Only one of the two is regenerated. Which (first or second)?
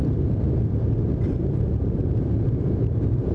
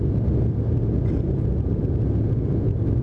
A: first